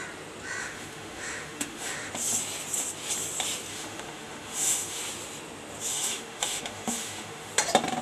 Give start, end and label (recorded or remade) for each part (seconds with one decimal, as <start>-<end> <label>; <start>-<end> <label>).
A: 0.0-0.6 recorded; 0.6-2.1 remade; 2.1-3.7 recorded; 3.7-5.0 remade; 5.0-5.9 recorded; 5.9-7.5 remade; 7.5-8.0 recorded